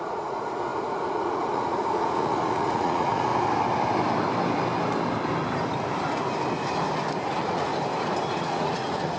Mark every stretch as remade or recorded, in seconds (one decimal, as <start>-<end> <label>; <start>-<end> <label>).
0.0-3.3 remade; 3.3-7.2 recorded; 7.2-7.7 remade; 7.7-8.3 recorded; 8.3-9.2 remade